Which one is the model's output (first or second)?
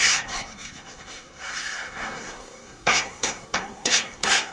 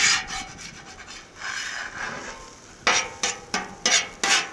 first